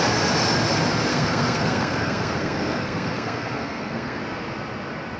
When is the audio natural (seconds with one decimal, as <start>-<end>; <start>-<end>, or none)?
0.0-1.1; 4.2-5.2